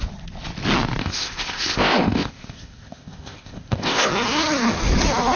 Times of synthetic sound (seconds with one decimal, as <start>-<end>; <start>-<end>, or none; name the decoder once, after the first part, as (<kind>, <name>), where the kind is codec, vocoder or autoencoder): 1.0-4.1 (codec, ZipCodec)